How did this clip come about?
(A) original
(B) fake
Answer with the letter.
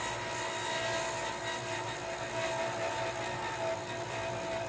A